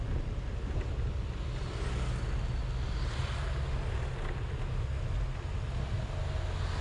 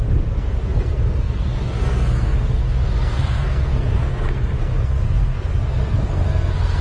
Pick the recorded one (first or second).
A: first